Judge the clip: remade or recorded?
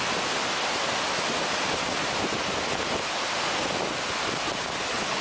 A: recorded